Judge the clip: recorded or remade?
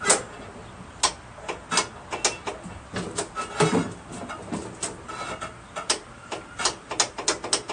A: recorded